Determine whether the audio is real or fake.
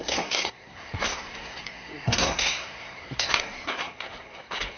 fake